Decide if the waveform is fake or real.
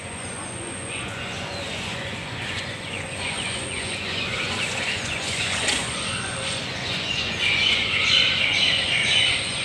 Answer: fake